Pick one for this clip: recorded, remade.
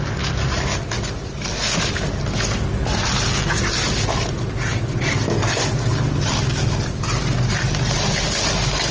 recorded